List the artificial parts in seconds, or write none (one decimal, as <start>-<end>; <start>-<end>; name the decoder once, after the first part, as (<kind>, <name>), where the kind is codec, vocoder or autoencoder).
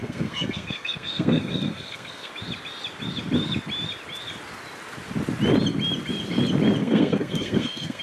0.0-2.3 (codec, SNAC); 6.8-8.0